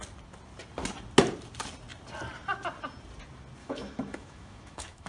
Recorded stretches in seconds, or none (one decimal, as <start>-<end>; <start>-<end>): 0.0-3.6